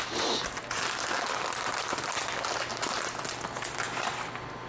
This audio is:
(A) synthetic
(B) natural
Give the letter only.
B